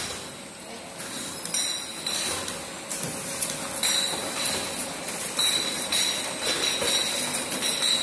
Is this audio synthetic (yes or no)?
no